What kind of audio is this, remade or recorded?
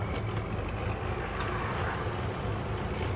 recorded